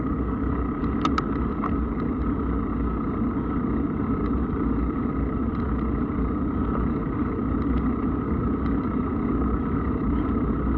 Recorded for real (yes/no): yes